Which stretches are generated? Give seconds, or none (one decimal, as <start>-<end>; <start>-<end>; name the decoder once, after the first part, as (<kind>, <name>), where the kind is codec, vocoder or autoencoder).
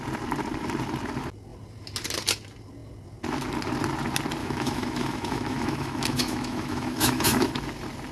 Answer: 4.4-7.5 (autoencoder, DAC-VAE)